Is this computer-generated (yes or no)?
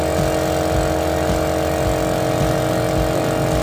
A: no